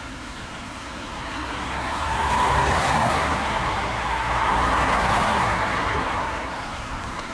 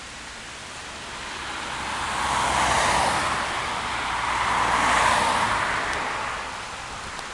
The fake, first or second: first